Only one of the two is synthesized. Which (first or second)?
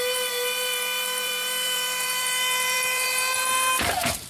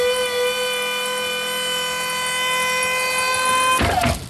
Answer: first